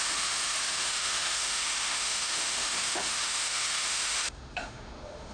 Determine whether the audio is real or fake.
fake